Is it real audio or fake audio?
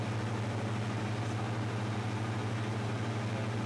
real